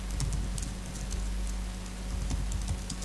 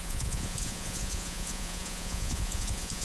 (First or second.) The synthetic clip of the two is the second